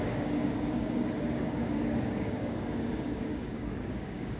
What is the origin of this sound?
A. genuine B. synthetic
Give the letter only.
B